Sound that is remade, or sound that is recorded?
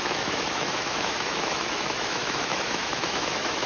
remade